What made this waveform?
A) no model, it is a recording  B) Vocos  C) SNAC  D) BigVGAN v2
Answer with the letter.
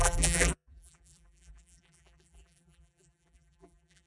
D